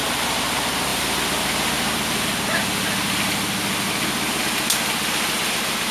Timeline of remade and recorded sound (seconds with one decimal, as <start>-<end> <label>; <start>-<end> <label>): 0.0-5.9 recorded